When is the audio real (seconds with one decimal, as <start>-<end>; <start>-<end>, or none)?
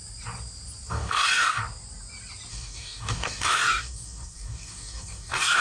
0.0-0.9; 1.6-2.5